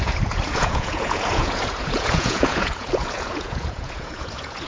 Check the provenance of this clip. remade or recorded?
remade